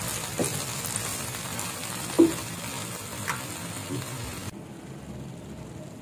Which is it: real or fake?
real